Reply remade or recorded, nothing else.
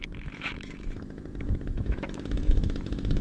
remade